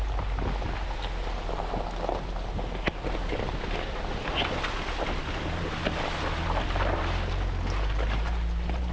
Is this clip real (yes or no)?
yes